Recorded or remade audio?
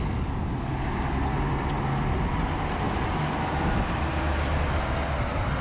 recorded